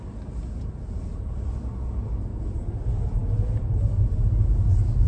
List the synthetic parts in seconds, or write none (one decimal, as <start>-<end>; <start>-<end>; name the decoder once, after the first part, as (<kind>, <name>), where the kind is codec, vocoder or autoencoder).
none